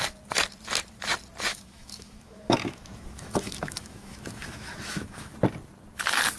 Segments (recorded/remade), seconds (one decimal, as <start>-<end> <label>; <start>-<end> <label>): 0.0-1.5 recorded; 1.5-5.3 remade; 5.3-6.4 recorded